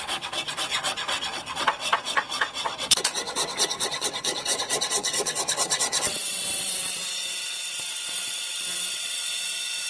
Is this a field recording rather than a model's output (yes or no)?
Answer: no